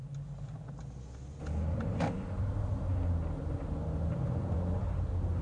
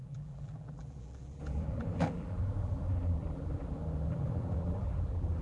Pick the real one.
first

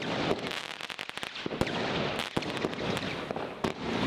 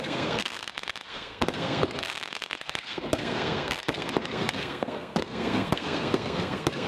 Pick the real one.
first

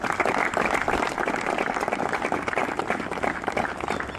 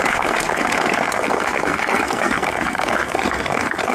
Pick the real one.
first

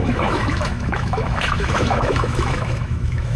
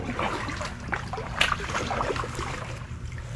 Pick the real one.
second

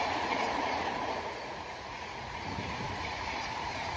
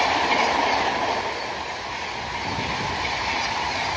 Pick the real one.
second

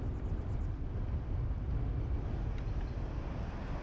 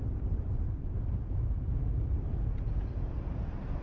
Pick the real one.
first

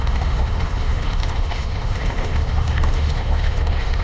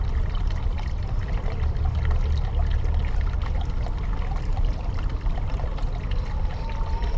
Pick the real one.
second